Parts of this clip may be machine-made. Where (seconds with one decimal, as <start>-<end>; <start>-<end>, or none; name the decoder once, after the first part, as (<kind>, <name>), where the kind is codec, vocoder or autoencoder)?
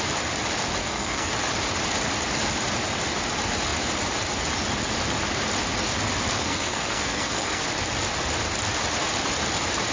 0.8-1.3 (codec, SNAC); 6.4-7.6